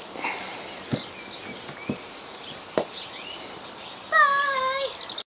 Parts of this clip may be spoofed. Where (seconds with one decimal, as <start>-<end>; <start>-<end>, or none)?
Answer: 4.3-4.8